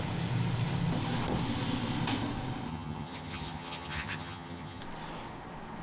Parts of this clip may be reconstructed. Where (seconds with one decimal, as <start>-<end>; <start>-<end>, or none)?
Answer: 2.7-4.8